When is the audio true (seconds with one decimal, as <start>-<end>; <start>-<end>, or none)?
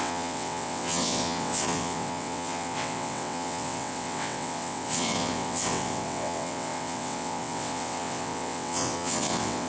none